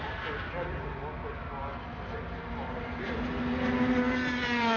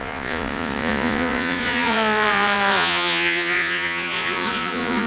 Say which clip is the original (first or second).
first